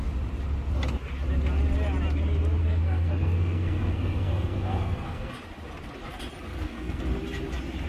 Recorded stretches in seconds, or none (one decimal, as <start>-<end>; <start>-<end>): 0.0-2.6; 5.3-6.5; 7.0-7.9